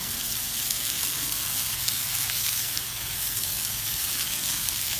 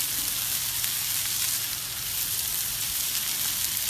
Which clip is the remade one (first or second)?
first